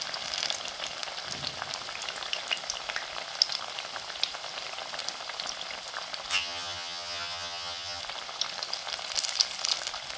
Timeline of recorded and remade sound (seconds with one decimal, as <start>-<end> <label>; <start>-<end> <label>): 0.0-6.3 recorded; 6.3-8.0 remade; 8.0-10.2 recorded